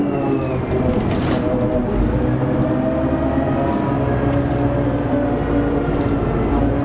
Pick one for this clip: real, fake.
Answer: real